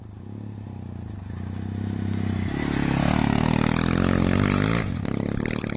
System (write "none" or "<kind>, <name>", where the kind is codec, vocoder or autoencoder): none